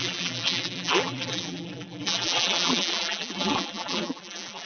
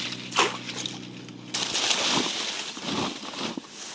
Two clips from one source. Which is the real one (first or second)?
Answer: second